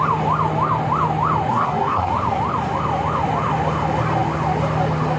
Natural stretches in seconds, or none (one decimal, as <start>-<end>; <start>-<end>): 0.0-1.5; 2.1-5.2